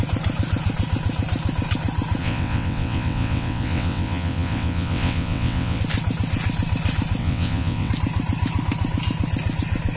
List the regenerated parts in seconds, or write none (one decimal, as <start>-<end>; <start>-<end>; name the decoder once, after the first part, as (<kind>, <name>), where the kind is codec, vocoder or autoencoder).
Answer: 2.2-5.8 (vocoder, WaveNeXt); 7.2-7.9

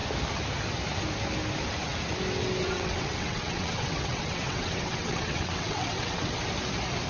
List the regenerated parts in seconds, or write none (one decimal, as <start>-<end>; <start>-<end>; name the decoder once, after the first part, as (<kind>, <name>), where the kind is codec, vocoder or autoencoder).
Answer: 2.6-6.4 (vocoder, WaveNeXt)

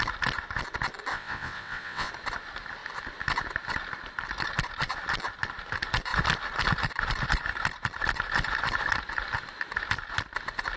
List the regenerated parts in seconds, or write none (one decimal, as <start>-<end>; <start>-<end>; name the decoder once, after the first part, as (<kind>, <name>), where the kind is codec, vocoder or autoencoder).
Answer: 1.1-2.1 (vocoder, WaveNeXt)

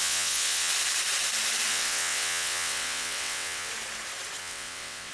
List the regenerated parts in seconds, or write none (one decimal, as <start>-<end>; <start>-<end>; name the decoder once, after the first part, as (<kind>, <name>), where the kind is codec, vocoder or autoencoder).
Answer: 0.0-0.7 (vocoder, WaveNeXt); 1.7-3.7; 4.4-5.1

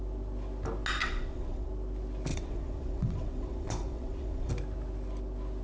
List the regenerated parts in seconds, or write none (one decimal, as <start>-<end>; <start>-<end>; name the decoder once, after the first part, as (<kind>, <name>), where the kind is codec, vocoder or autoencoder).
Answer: 1.0-1.7 (vocoder, WaveNeXt); 2.3-4.5